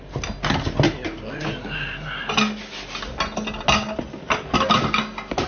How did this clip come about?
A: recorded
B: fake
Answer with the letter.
A